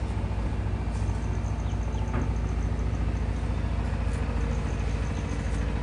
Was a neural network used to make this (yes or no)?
no